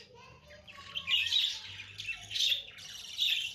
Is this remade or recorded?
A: recorded